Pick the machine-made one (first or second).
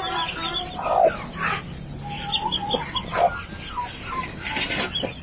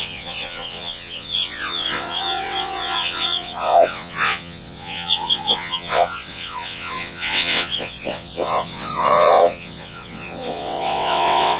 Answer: second